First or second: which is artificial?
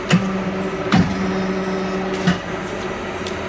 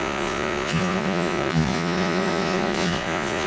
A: second